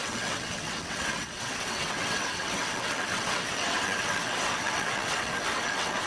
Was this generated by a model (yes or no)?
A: yes